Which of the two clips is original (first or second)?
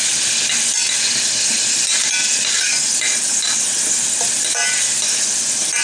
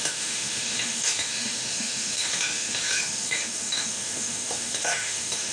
first